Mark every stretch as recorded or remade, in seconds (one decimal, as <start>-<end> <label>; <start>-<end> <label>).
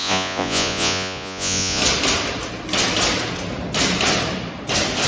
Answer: 0.0-1.8 remade; 1.8-5.1 recorded